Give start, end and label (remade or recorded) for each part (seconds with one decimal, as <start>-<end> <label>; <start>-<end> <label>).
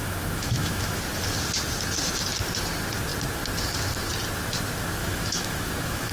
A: 0.0-1.0 remade; 1.0-5.0 recorded; 5.0-6.1 remade